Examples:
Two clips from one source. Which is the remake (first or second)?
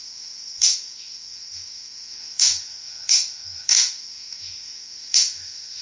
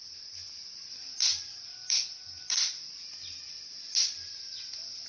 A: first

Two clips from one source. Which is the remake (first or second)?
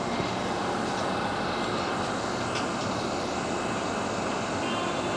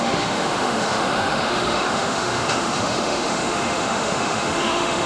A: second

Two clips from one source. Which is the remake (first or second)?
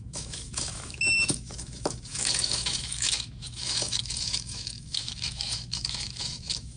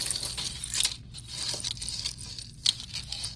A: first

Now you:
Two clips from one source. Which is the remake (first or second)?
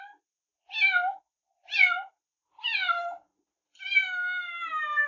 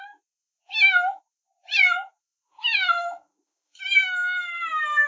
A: second